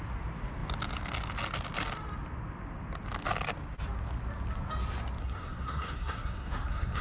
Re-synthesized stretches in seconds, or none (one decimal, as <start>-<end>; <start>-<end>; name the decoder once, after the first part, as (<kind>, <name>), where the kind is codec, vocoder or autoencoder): 5.2-7.0 (codec, SNAC)